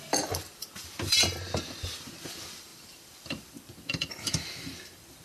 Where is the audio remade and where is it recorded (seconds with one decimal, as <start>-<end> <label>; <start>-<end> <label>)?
0.0-5.2 remade